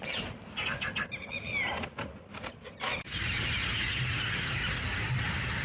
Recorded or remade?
recorded